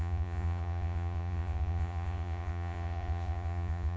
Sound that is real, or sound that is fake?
fake